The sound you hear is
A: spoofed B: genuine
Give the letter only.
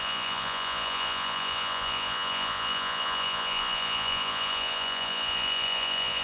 A